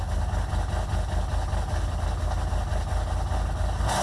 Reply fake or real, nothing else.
real